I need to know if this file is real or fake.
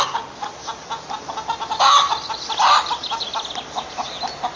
real